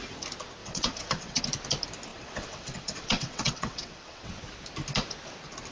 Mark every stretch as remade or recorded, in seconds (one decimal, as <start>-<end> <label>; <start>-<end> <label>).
0.0-0.6 recorded; 0.6-1.4 remade; 1.4-2.1 recorded; 2.1-4.3 remade; 4.3-5.7 recorded

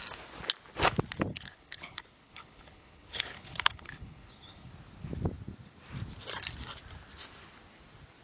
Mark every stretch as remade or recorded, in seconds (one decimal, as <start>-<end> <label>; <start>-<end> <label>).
0.0-1.3 recorded; 1.3-4.7 remade; 4.7-8.2 recorded

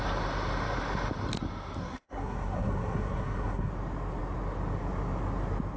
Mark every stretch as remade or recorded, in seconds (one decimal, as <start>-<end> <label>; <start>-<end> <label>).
0.0-1.8 recorded; 1.8-3.7 remade; 3.7-5.8 recorded

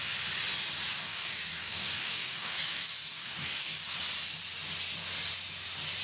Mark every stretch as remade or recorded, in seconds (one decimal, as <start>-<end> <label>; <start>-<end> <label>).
0.0-0.9 recorded; 0.9-4.0 remade; 4.0-6.0 recorded